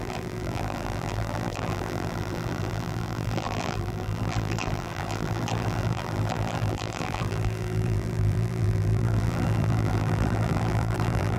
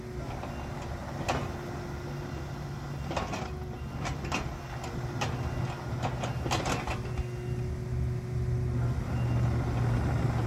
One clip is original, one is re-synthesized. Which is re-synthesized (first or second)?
first